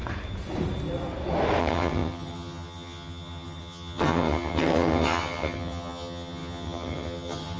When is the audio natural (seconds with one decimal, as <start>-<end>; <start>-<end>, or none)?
0.0-1.6